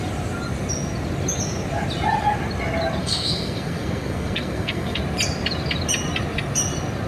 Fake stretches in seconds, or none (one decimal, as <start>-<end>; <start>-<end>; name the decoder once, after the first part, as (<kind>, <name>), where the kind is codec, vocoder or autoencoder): 3.0-5.0 (codec, SNAC)